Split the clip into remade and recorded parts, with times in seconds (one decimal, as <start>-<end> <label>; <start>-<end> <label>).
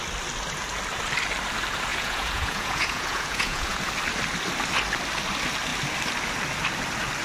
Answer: 0.0-1.9 recorded; 1.9-3.8 remade; 3.8-7.2 recorded